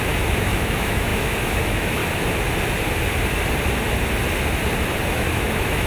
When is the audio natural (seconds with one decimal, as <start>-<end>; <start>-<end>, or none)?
2.0-5.1